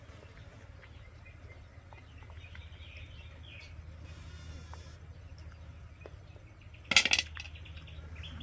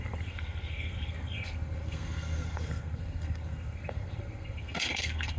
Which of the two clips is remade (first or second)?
second